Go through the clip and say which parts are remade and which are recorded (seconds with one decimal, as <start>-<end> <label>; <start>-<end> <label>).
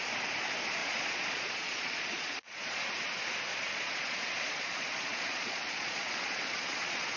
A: 0.0-0.8 recorded; 0.8-2.9 remade; 2.9-3.5 recorded; 3.5-7.2 remade